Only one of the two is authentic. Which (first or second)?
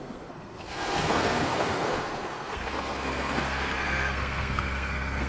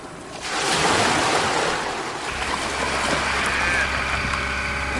second